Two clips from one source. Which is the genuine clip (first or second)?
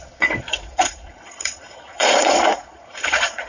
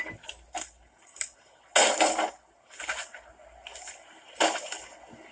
second